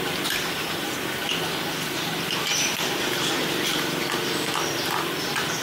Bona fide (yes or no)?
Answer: yes